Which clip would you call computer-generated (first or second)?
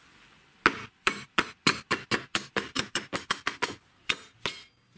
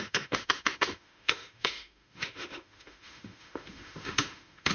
second